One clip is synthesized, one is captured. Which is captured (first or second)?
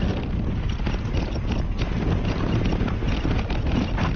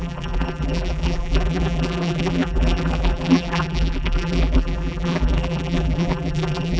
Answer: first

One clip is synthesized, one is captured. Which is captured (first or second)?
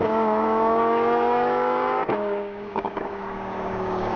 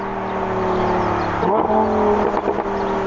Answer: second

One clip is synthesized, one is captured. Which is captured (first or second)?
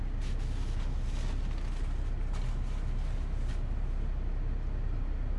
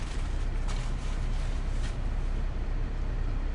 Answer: first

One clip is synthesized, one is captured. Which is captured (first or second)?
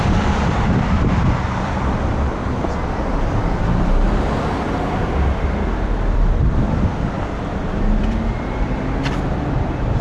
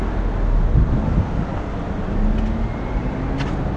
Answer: second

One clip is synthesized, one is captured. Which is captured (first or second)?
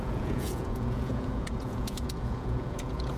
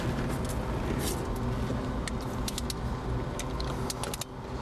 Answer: second